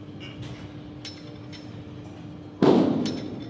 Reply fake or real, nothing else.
real